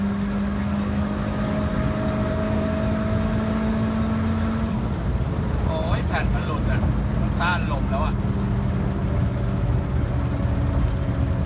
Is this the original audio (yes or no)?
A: yes